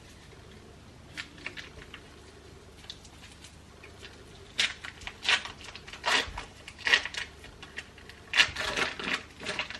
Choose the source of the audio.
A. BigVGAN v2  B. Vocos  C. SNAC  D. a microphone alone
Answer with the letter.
D